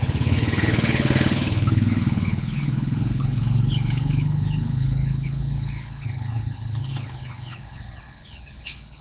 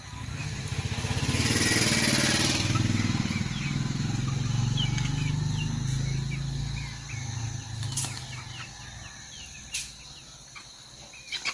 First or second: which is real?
second